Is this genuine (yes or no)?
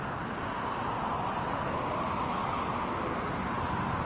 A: yes